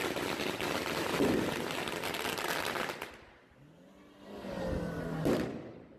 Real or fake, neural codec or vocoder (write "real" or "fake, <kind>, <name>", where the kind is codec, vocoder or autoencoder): real